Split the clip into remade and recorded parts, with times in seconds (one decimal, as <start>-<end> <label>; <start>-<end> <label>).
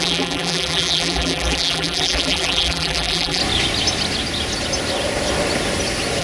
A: 0.0-3.4 remade; 3.4-6.2 recorded